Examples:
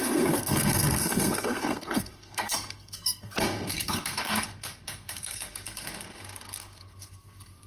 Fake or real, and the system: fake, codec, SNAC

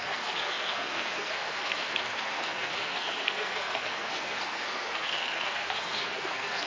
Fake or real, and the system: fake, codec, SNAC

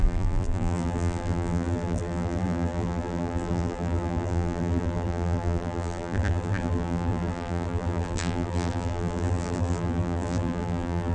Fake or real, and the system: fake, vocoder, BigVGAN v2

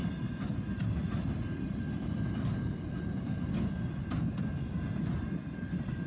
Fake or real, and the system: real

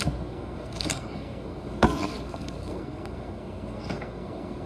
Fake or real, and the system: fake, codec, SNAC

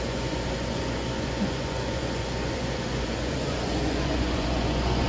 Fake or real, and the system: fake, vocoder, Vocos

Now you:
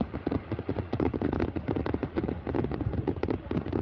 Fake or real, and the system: fake, vocoder, Vocos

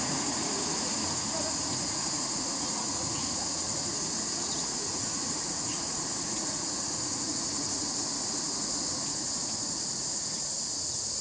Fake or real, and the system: fake, vocoder, Vocos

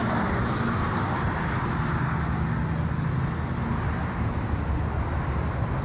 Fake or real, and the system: real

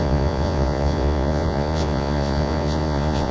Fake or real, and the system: fake, vocoder, Vocos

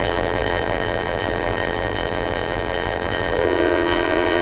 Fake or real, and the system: fake, vocoder, BigVGAN v2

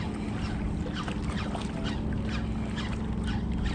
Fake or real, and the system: real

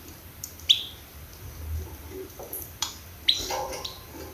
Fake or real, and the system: fake, vocoder, BigVGAN v2